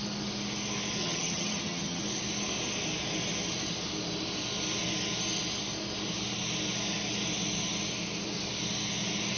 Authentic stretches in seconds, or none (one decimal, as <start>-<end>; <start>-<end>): 0.0-1.0; 2.0-9.4